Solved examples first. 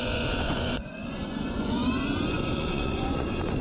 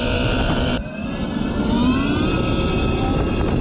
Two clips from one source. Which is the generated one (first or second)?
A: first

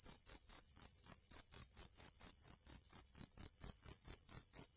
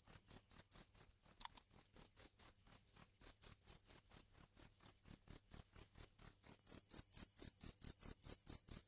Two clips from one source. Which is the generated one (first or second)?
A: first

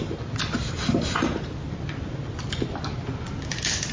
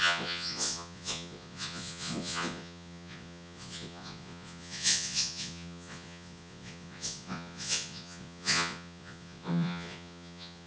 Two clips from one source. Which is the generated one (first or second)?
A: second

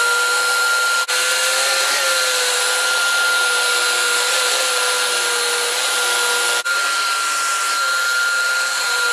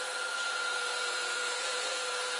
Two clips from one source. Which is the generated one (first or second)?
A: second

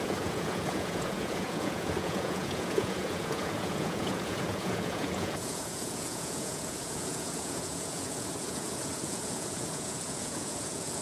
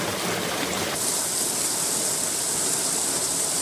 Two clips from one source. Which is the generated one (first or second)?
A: first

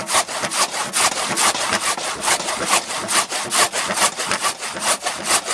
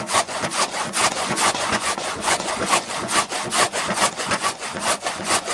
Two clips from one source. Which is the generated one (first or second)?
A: second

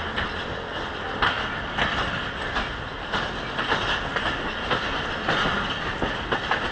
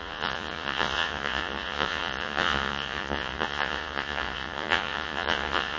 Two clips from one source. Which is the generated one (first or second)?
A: second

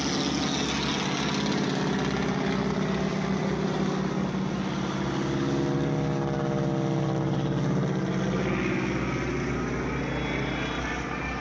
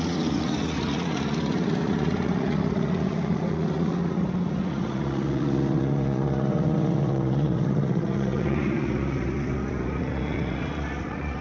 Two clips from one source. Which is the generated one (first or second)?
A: second